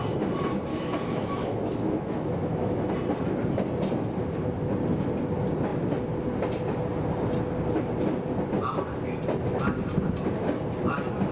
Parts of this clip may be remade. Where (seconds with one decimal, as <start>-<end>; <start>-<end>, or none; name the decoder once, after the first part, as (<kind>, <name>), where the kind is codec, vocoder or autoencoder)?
0.7-2.9 (autoencoder, DAC-VAE)